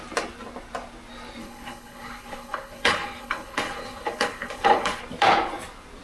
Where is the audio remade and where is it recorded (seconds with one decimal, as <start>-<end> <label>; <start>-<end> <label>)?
0.0-1.4 recorded; 1.4-5.0 remade; 5.0-6.0 recorded